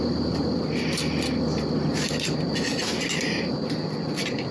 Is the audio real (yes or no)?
yes